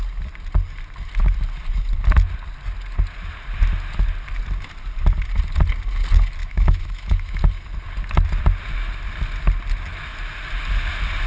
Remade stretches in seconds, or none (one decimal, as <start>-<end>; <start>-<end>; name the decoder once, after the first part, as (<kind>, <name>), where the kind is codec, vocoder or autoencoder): 6.4-7.4 (autoencoder, DAC-VAE)

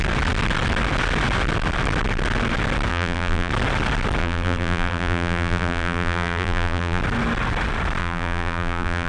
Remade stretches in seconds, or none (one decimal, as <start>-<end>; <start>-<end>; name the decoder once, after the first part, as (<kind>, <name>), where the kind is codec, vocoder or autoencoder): 2.9-3.5 (vocoder, BigVGAN v2); 4.2-7.0; 8.0-9.1

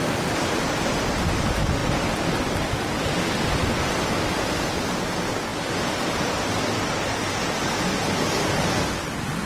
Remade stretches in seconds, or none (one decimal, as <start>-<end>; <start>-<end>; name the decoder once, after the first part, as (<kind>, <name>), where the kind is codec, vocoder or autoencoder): none